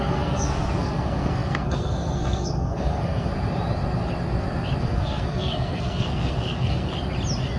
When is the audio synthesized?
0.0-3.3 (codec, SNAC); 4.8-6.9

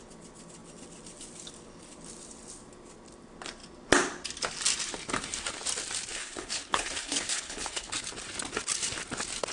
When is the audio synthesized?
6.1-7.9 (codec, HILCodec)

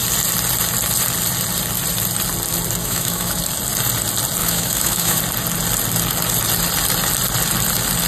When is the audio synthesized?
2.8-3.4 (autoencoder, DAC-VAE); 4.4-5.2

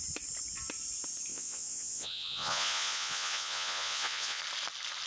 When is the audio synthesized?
1.3-4.4 (vocoder, Vocos)